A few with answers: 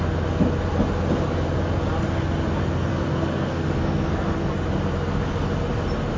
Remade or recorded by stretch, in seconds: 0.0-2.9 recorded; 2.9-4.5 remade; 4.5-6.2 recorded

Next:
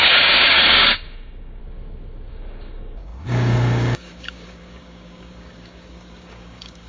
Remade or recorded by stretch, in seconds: 0.0-1.6 remade; 1.6-2.3 recorded; 2.3-6.9 remade